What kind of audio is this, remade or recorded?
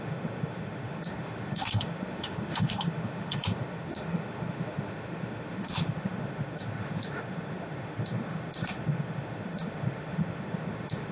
remade